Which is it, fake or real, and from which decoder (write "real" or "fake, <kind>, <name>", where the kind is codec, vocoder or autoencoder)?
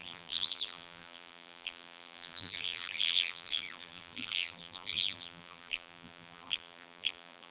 fake, vocoder, BigVGAN v2